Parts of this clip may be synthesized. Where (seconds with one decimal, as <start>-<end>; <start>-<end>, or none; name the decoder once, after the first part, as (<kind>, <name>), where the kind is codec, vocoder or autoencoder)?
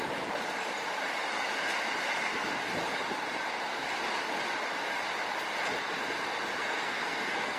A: 6.6-7.6 (codec, SNAC)